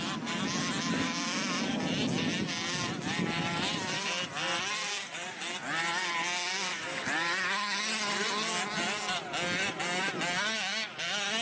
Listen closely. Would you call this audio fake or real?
real